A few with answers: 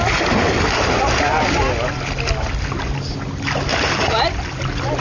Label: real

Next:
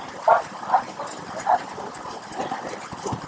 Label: real